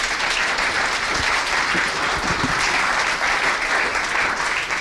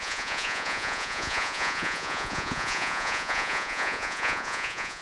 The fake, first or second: second